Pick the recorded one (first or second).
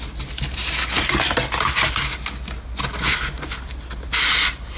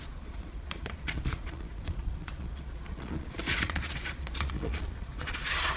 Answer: first